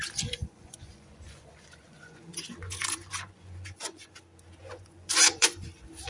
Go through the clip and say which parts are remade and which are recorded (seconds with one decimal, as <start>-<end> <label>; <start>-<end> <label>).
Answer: 0.0-0.4 recorded; 0.4-4.1 remade; 4.1-4.6 recorded; 4.6-5.6 remade; 5.6-6.1 recorded